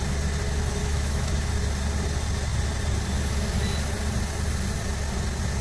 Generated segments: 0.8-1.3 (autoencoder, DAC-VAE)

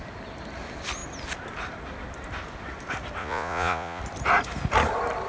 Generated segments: 3.2-4.0 (vocoder, Vocos)

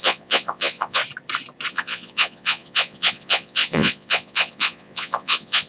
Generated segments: 0.0-1.0 (vocoder, Vocos); 1.7-5.7

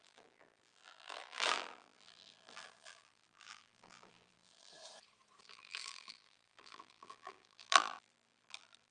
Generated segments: 0.0-4.7 (vocoder, BigVGAN v2); 5.4-8.9

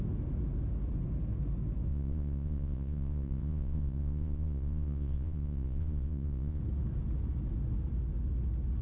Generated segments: 1.9-6.6 (vocoder, Vocos)

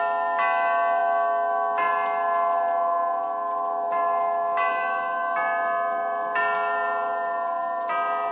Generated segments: none

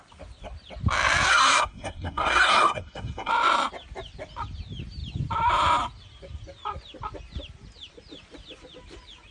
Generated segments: 1.3-3.3 (codec, SNAC)